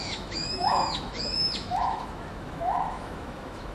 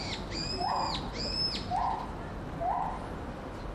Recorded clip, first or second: second